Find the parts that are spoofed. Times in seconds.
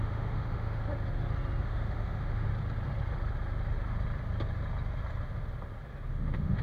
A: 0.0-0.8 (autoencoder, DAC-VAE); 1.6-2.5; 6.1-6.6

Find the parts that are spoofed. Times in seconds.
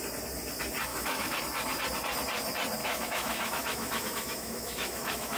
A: 0.9-1.4 (autoencoder, DAC-VAE); 2.8-5.4